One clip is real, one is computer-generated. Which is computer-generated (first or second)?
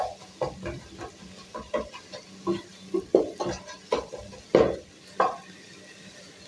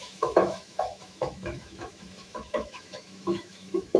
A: second